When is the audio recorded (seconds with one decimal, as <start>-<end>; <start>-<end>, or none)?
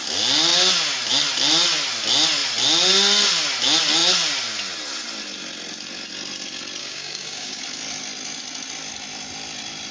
0.0-6.8; 7.6-9.9